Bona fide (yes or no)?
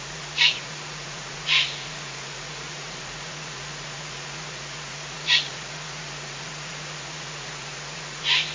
no